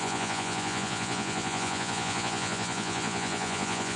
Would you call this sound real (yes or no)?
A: no